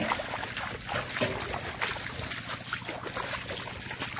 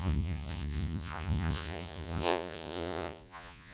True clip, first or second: first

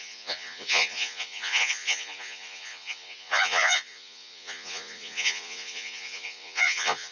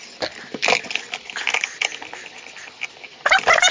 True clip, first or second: second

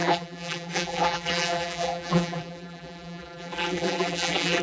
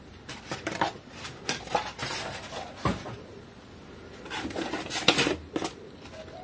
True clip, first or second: second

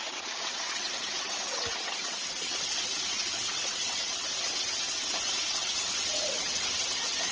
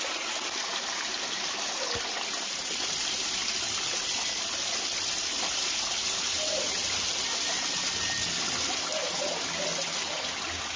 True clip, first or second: second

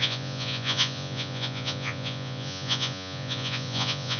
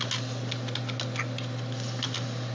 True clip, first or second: second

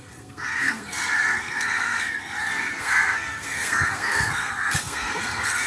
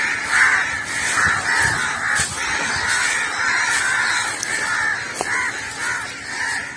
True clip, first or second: second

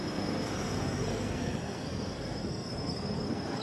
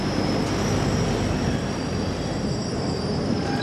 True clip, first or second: second